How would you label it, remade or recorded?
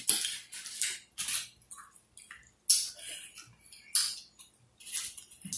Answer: recorded